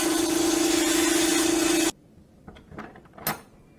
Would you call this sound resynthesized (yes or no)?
no